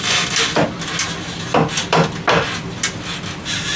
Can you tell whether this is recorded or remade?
recorded